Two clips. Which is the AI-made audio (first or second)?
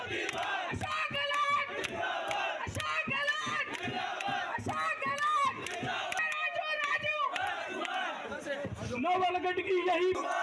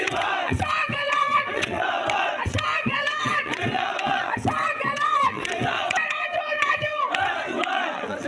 second